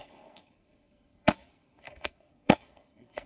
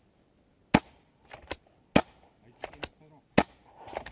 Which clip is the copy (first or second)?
first